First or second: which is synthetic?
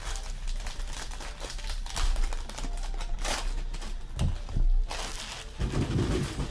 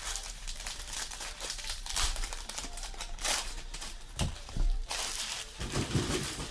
second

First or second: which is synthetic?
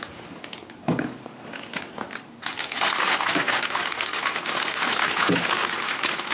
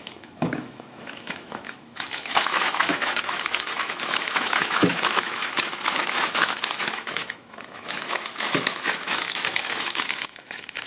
second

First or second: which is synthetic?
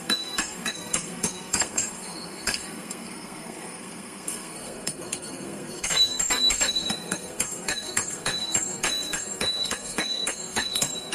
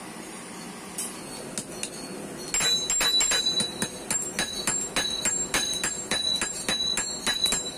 first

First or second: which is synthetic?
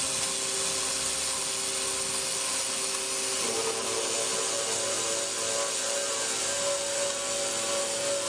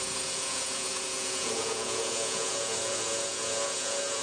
second